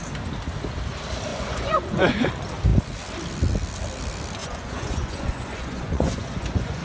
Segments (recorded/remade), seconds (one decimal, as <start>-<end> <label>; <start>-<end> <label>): 0.0-1.3 recorded; 1.3-2.3 remade; 2.3-4.4 recorded; 4.4-6.8 remade